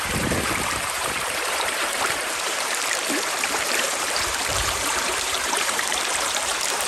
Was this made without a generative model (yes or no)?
no